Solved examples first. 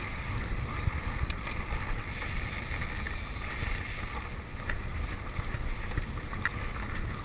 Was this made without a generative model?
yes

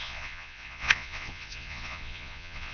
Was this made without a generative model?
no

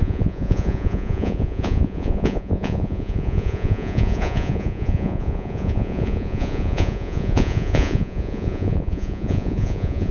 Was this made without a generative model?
no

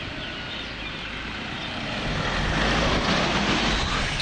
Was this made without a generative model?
yes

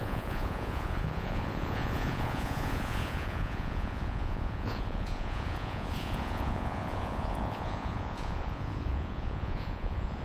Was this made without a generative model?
no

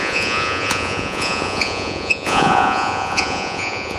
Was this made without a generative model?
no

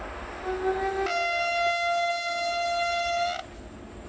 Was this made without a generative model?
yes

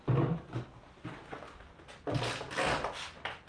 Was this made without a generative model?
yes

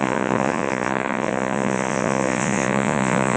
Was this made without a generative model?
no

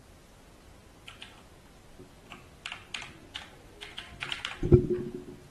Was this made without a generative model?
yes